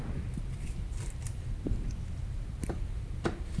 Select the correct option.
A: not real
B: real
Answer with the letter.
B